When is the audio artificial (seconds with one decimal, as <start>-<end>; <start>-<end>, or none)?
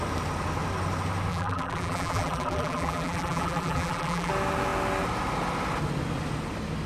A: 1.3-4.3